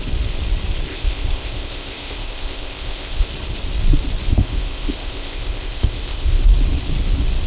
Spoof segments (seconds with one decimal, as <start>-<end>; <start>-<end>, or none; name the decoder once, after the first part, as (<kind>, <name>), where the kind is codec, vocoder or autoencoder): 0.9-3.3 (codec, ZipCodec); 4.3-6.4

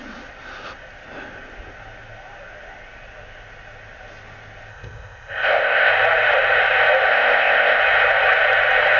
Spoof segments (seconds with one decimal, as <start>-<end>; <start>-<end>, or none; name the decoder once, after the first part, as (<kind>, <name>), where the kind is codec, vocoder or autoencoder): 4.7-5.9 (codec, ZipCodec); 7.1-7.8

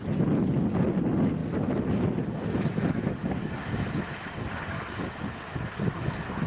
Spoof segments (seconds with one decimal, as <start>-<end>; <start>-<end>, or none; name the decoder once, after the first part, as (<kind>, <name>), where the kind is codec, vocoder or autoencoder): none

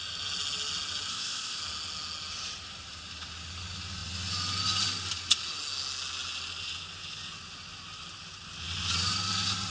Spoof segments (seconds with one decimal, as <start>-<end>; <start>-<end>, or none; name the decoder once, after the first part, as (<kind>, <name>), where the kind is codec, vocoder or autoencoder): 1.1-1.6 (codec, ZipCodec)